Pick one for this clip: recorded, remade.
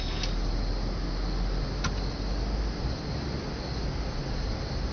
recorded